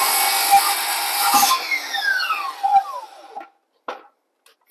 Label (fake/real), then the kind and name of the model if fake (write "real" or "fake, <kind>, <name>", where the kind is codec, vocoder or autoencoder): real